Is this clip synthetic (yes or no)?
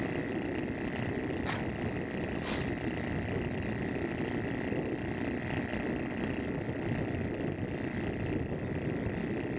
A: no